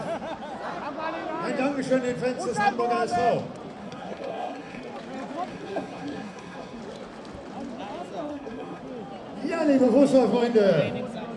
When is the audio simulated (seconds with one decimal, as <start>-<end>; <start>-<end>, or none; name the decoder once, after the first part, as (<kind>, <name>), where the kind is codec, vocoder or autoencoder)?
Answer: 3.8-4.8 (codec, SNAC); 5.5-6.8; 8.3-8.8